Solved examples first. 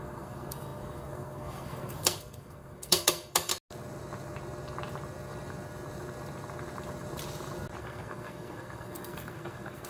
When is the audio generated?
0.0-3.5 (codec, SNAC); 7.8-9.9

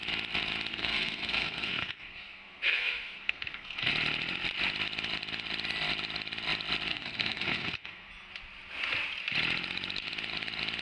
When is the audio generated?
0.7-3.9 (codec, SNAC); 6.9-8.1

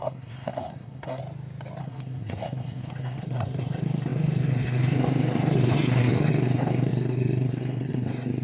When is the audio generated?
0.0-1.2 (codec, SNAC); 1.8-8.4